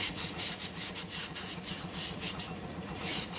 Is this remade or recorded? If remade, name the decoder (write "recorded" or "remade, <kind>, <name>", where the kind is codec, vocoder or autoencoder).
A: remade, vocoder, Vocos